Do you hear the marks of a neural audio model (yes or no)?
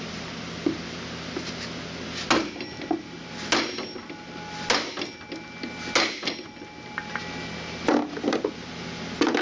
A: no